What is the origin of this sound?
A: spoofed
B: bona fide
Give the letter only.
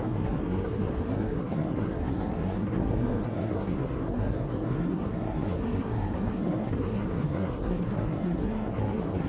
A